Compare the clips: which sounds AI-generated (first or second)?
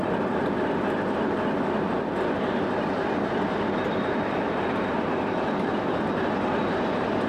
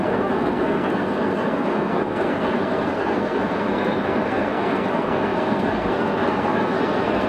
second